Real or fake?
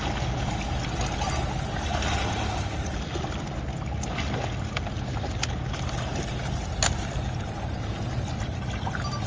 real